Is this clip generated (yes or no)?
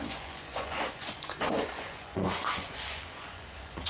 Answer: yes